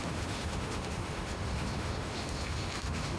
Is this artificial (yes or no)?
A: yes